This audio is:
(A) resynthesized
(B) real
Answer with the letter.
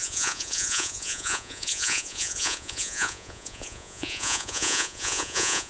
A